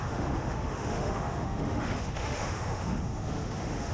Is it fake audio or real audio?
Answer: fake